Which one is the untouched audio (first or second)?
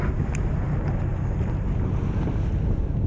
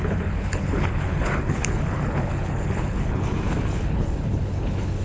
first